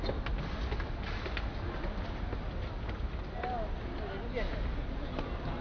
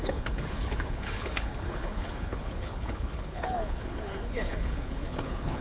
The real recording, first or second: first